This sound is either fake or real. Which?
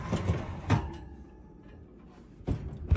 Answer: real